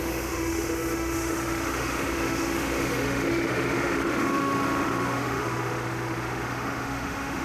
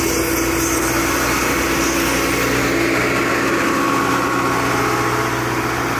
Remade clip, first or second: first